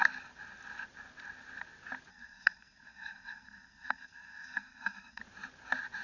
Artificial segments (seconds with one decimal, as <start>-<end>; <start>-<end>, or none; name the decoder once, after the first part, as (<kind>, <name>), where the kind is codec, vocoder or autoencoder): 2.1-5.2 (codec, SNAC)